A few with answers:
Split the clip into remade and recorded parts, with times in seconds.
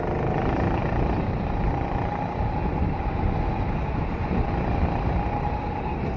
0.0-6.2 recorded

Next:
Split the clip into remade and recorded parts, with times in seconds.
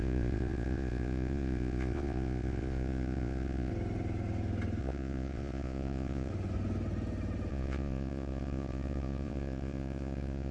0.0-3.7 remade; 3.7-4.8 recorded; 4.8-6.3 remade; 6.3-7.5 recorded; 7.5-10.5 remade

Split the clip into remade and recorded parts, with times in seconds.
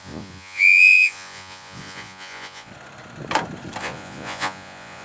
0.0-2.7 remade; 2.7-3.8 recorded; 3.8-5.0 remade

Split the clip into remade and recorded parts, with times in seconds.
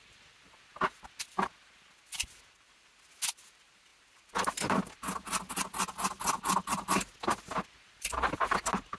0.0-9.0 recorded